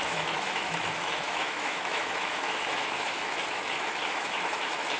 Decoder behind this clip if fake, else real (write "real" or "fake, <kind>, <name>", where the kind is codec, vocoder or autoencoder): fake, autoencoder, DAC-VAE